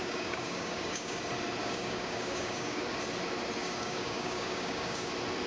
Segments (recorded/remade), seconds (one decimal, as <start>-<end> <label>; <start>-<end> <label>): 0.0-1.2 remade; 1.2-1.6 recorded; 1.6-2.8 remade; 2.8-3.6 recorded; 3.6-5.1 remade; 5.1-5.5 recorded